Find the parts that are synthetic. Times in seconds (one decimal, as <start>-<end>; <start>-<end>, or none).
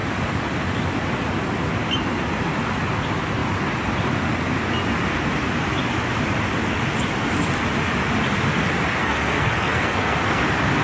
9.0-10.4